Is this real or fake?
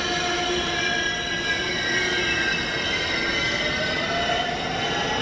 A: real